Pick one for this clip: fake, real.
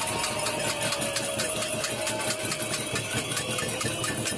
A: real